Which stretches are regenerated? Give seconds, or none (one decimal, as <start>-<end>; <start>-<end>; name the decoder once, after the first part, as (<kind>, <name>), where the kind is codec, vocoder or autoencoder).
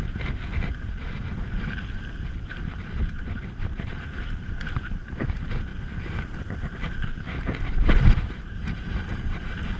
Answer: 0.0-0.5 (vocoder, BigVGAN v2); 2.3-5.7; 7.7-9.8